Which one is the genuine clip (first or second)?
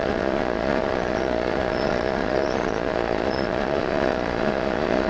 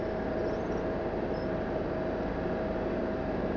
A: second